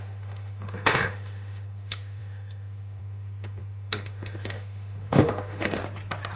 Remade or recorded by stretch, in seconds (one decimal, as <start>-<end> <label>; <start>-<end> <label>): 0.0-5.8 remade; 5.8-6.4 recorded